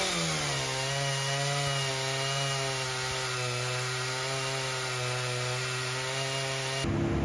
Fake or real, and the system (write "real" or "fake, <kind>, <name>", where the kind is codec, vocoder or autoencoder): real